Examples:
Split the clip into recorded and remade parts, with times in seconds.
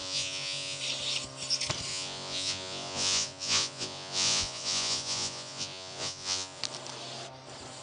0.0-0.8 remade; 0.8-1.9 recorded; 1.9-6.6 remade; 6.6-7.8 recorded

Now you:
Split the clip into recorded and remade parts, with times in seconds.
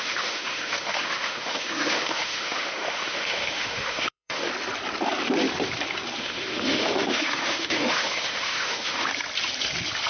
0.0-4.5 remade; 4.5-6.2 recorded; 6.2-9.1 remade; 9.1-10.1 recorded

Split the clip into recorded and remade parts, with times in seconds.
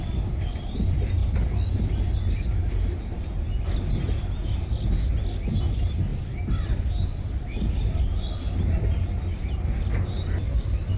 0.0-11.0 recorded